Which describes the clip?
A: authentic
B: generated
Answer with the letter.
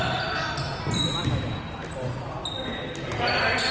A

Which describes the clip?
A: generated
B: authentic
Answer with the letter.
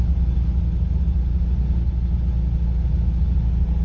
B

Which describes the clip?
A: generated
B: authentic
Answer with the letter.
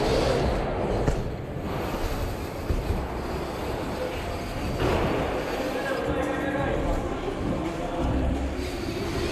B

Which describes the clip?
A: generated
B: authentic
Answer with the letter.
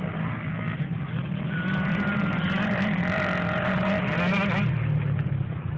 B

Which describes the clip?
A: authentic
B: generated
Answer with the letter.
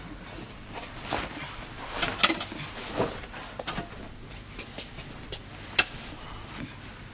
A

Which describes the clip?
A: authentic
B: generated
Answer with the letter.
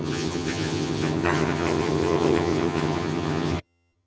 B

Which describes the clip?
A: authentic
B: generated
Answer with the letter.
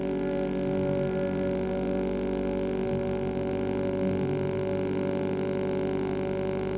A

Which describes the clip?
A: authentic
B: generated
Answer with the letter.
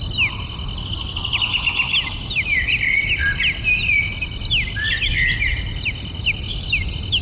A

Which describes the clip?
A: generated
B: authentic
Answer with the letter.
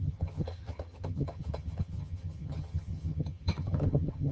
A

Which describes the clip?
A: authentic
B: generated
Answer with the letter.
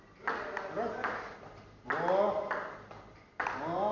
A